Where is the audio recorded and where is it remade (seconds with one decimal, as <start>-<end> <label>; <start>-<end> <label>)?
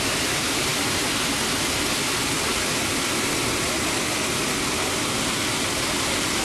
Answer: 0.0-6.4 recorded